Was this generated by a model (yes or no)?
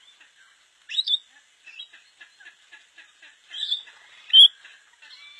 no